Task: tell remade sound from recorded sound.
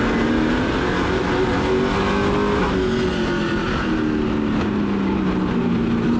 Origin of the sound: recorded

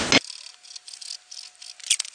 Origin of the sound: recorded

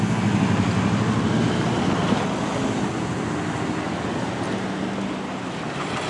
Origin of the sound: recorded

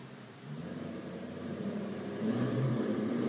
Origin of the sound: remade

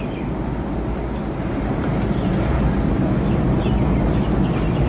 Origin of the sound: recorded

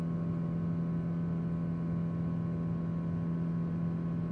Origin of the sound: recorded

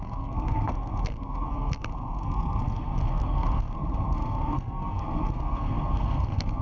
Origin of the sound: remade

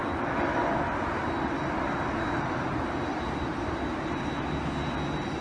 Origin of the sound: recorded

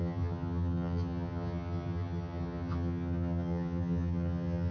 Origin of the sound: remade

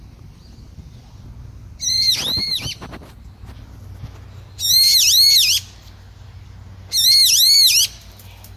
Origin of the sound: recorded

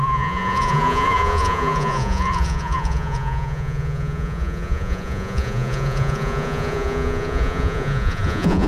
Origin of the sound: remade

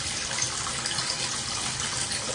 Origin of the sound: recorded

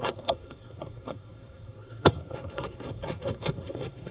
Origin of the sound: remade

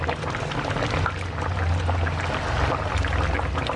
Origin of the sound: recorded